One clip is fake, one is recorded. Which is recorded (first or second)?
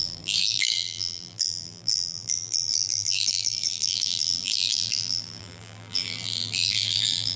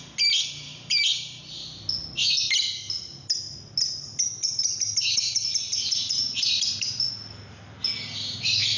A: second